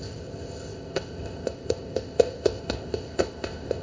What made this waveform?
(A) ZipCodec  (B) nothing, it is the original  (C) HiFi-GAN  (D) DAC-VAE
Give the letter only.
A